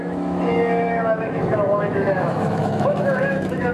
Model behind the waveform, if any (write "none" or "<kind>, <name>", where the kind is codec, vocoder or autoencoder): autoencoder, DAC-VAE